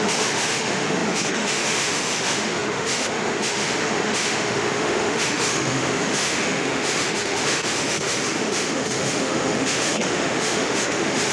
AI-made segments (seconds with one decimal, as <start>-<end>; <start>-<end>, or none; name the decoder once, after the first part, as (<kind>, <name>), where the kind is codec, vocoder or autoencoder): 0.0-11.3 (autoencoder, DAC-VAE)